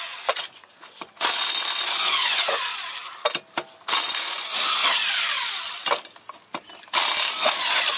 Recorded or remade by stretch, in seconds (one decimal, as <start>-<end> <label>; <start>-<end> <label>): 0.0-2.7 remade; 2.7-4.1 recorded; 4.1-4.8 remade; 4.8-7.5 recorded; 7.5-8.0 remade